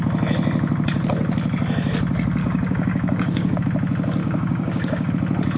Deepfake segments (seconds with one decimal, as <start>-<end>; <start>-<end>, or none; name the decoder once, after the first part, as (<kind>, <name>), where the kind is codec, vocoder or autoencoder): 2.4-3.6 (codec, DAC); 4.2-5.1